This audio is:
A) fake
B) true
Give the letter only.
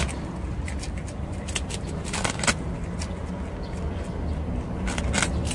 B